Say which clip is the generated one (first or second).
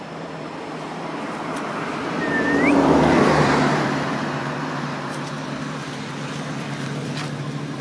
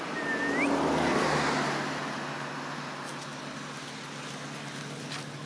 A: first